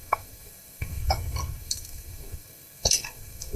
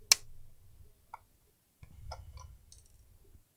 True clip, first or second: second